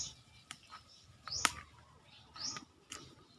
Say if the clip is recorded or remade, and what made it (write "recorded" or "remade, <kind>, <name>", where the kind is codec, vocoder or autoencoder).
recorded